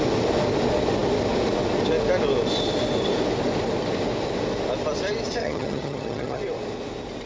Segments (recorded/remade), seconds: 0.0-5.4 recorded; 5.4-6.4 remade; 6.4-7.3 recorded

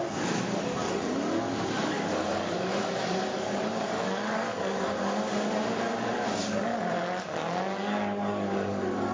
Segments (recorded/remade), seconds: 0.0-0.8 remade; 0.8-1.6 recorded; 1.6-6.7 remade; 6.7-7.8 recorded; 7.8-9.1 remade

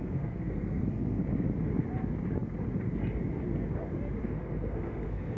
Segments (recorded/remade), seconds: 0.0-1.2 remade; 1.2-4.2 recorded; 4.2-5.4 remade

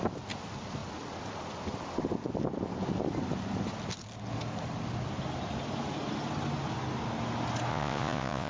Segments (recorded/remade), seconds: 0.0-7.7 recorded; 7.7-8.5 remade

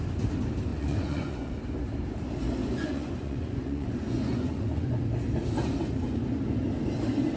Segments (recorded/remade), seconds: 0.0-0.7 recorded; 0.7-1.6 remade; 1.6-2.6 recorded; 2.6-5.0 remade; 5.0-7.4 recorded

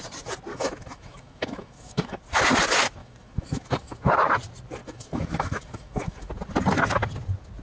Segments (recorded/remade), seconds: 0.0-0.5 recorded; 0.5-2.2 remade; 2.2-3.0 recorded; 3.0-4.1 remade; 4.1-4.8 recorded; 4.8-6.3 remade; 6.3-7.6 recorded

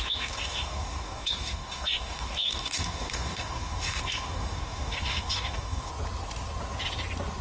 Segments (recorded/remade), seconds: 0.0-5.9 remade; 5.9-7.4 recorded

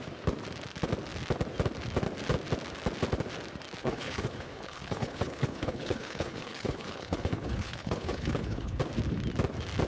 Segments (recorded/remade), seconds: 0.0-3.8 recorded; 3.8-8.8 remade; 8.8-9.9 recorded